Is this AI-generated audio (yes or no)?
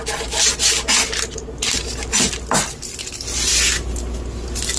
no